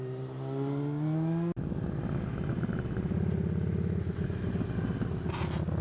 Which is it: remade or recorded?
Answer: recorded